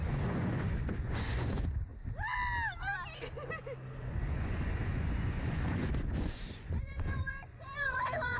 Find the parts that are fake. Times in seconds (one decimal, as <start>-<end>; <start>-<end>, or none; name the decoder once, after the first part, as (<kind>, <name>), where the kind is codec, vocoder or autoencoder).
0.0-1.9 (vocoder, Vocos); 4.0-8.4